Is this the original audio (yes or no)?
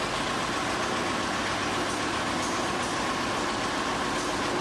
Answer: yes